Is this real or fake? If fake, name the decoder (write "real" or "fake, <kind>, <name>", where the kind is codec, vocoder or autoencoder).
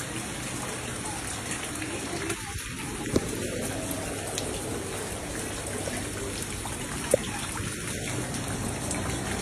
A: real